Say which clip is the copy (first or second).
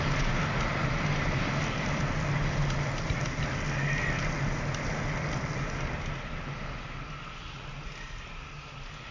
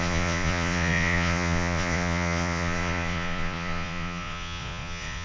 second